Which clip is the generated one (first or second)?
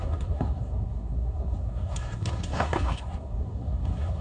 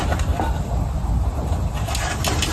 first